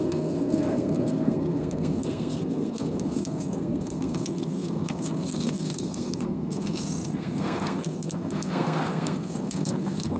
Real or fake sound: fake